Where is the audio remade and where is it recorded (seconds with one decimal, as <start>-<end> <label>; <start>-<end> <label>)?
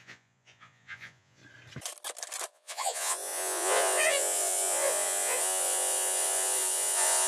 0.0-1.4 remade; 1.4-2.5 recorded; 2.5-7.3 remade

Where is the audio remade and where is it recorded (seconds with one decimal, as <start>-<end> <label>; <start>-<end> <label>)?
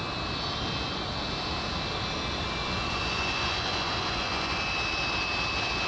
0.0-2.6 recorded; 2.6-4.6 remade; 4.6-5.9 recorded